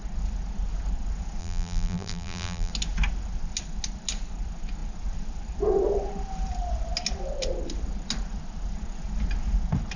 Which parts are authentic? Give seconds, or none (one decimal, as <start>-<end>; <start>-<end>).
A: 0.0-1.4; 2.7-10.0